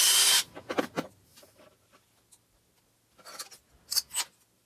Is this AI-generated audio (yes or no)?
no